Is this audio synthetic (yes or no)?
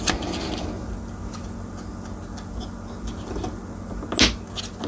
no